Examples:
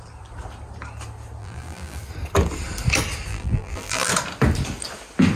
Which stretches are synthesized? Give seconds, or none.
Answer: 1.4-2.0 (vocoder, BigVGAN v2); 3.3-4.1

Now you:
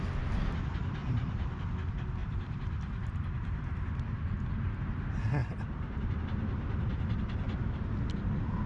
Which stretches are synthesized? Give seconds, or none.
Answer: 1.0-1.6 (vocoder, BigVGAN v2); 2.2-4.8; 5.4-6.2

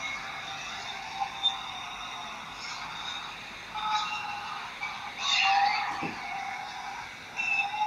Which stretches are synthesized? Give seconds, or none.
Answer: none

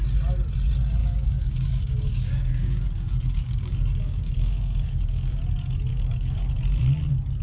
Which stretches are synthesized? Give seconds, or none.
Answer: 1.0-5.4 (codec, DAC); 5.9-6.5

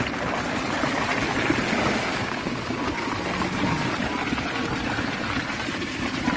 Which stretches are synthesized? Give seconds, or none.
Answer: 2.1-3.1 (codec, DAC)

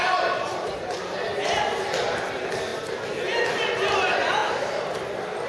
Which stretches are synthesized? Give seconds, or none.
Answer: 0.0-0.8 (vocoder, BigVGAN v2)